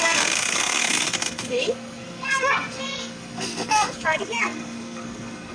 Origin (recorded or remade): remade